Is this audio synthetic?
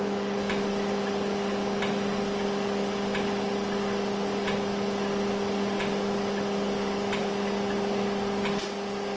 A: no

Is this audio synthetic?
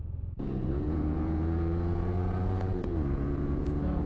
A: yes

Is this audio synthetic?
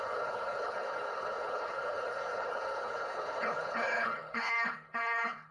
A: yes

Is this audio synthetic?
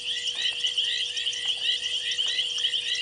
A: no